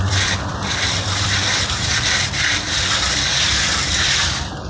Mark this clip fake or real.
fake